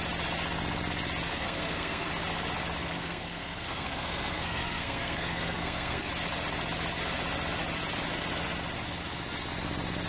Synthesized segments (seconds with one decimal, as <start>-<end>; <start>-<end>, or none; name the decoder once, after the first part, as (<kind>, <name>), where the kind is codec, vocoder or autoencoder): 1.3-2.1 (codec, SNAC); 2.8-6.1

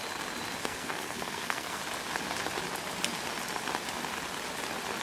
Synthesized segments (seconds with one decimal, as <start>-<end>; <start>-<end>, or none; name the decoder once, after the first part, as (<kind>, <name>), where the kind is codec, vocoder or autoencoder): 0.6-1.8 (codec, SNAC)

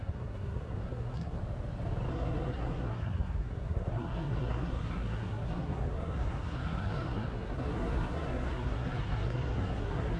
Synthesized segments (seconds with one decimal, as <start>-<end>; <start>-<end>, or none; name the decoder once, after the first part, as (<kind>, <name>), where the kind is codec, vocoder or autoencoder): 0.0-1.4 (codec, SNAC); 2.1-10.2